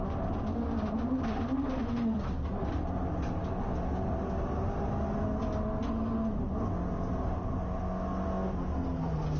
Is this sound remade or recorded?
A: recorded